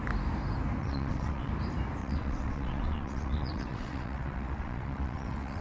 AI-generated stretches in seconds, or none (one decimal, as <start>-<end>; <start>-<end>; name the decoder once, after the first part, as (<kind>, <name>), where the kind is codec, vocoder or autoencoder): 0.8-1.5 (vocoder, WaveNeXt); 2.0-5.6